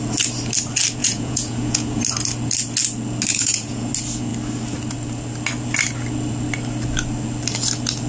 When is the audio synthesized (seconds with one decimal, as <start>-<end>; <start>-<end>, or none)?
1.0-2.0; 3.3-3.9